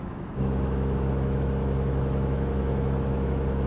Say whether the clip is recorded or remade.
remade